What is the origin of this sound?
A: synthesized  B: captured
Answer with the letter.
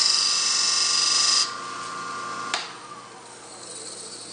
B